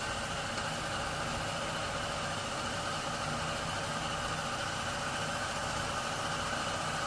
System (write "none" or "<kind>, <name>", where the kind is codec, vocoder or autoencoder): none